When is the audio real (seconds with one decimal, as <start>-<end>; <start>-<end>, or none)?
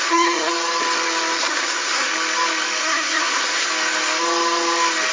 0.5-1.4; 2.1-2.8; 3.7-5.1